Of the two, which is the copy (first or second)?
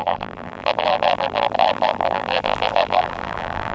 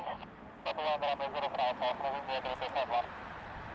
first